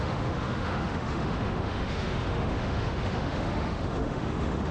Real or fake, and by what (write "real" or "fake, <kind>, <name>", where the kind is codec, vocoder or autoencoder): fake, autoencoder, DAC-VAE